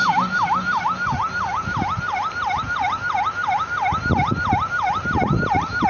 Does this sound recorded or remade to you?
recorded